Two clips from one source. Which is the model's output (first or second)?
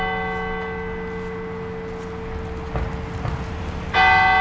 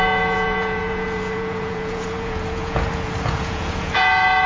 second